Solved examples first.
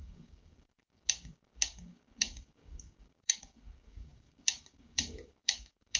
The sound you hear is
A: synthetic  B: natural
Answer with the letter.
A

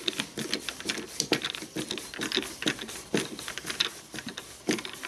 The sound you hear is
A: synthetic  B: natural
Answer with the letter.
B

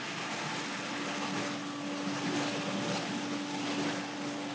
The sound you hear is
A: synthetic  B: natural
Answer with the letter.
B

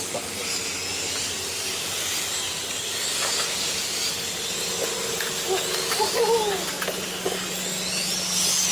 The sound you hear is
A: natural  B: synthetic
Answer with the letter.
A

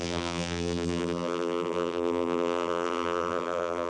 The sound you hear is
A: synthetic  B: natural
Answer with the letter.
A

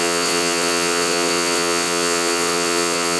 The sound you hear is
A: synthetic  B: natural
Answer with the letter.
A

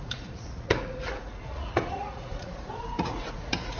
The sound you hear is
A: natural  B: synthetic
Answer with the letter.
B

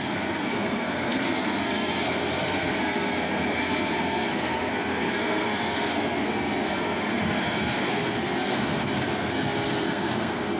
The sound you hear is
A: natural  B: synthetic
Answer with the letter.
B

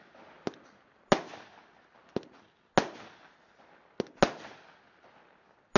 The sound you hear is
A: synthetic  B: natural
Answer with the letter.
B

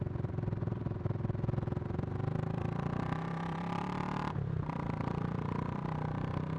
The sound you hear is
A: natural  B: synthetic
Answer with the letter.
B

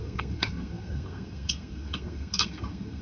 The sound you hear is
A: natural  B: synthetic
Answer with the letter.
B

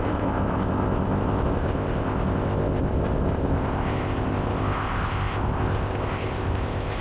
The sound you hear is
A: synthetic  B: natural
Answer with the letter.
A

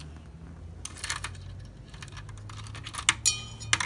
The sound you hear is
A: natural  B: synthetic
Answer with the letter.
A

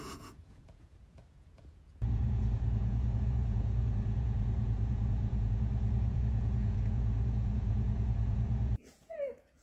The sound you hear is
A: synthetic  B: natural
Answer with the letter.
A